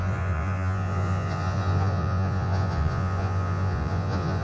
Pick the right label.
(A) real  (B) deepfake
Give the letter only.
B